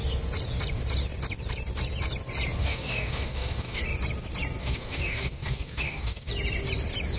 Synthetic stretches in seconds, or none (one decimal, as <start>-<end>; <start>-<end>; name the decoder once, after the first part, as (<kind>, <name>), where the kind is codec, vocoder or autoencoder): 2.6-3.8 (codec, DAC); 4.6-6.3